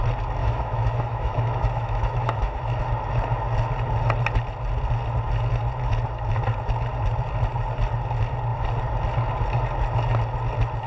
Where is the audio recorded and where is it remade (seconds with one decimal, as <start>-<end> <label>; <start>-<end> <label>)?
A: 0.0-0.4 recorded; 0.4-2.8 remade; 2.8-10.9 recorded